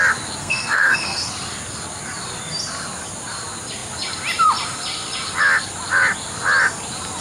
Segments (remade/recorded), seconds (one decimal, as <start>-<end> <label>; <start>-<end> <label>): 0.0-0.4 recorded; 0.4-1.3 remade; 1.3-7.2 recorded